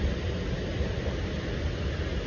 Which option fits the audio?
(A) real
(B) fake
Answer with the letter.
A